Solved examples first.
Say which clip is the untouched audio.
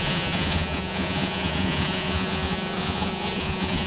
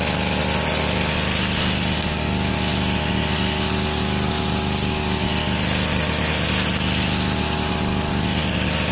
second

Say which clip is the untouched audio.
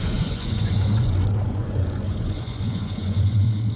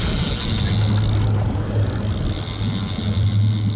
second